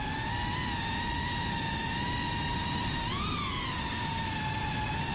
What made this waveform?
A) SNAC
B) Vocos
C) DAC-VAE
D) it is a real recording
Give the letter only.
D